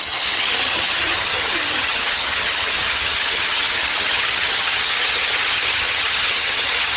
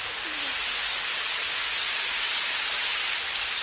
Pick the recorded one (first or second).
second